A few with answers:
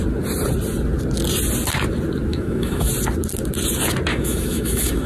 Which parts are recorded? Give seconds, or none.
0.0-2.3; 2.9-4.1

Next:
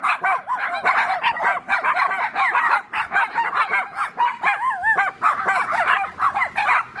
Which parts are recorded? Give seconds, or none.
0.0-1.5; 3.2-7.0

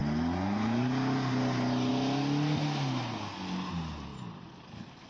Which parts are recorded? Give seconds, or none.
0.0-5.1